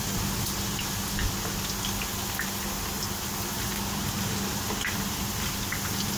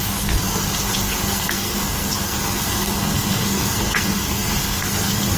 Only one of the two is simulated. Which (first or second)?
second